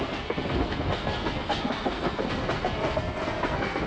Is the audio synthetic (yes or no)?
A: yes